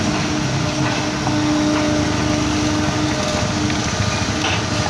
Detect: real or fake real